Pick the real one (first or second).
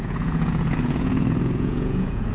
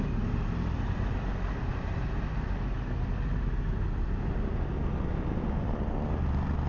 second